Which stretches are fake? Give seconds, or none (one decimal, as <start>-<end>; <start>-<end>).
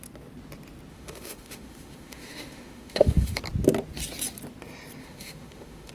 0.9-3.4; 5.0-5.9